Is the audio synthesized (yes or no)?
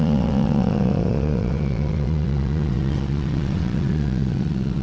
yes